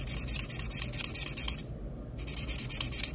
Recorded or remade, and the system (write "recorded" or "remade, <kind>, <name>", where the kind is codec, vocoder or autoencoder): recorded